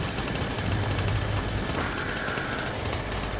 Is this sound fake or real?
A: real